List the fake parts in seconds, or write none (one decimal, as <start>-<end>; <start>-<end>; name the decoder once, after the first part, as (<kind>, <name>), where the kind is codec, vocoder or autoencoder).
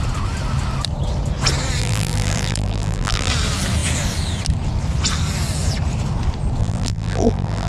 1.8-3.3 (vocoder, BigVGAN v2); 6.6-7.7